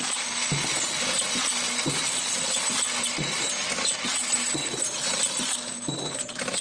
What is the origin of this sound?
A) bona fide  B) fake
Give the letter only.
A